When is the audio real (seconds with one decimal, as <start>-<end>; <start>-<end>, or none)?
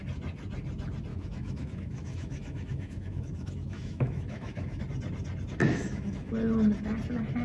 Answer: 0.0-1.1; 4.8-5.6; 6.3-7.4